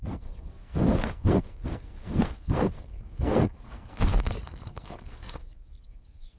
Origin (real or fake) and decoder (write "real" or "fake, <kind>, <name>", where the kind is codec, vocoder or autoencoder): fake, codec, SNAC